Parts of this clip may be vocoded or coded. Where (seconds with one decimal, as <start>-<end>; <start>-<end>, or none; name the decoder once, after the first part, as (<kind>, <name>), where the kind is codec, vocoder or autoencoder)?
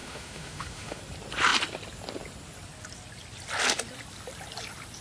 0.0-1.0 (autoencoder, DAC-VAE)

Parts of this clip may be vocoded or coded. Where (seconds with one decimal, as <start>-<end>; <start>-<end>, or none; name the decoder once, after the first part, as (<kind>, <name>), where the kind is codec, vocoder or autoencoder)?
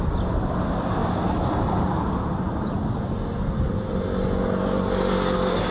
none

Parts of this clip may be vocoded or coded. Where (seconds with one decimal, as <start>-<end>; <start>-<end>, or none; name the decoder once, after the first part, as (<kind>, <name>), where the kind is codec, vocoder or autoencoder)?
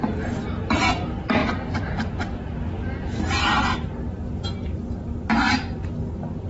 none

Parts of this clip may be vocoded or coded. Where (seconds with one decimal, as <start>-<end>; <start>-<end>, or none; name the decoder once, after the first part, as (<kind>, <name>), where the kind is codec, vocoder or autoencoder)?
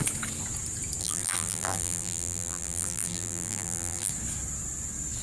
1.0-4.1 (vocoder, BigVGAN v2)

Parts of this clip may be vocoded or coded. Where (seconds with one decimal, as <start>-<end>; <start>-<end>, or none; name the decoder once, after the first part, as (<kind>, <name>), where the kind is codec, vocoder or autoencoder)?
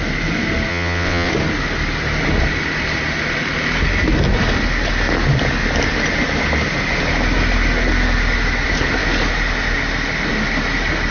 0.7-1.3 (vocoder, WaveNeXt)